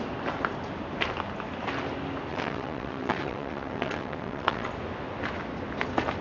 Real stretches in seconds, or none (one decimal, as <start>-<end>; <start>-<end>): 0.0-2.3; 4.7-6.2